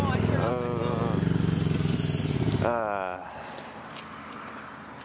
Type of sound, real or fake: real